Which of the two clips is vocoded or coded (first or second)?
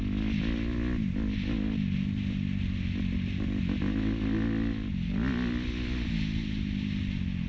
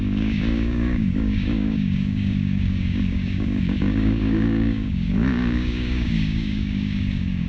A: second